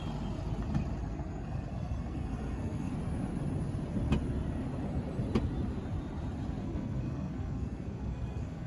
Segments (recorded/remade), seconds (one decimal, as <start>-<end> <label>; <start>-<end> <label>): 0.0-1.0 recorded; 1.0-2.9 remade; 2.9-6.6 recorded; 6.6-8.7 remade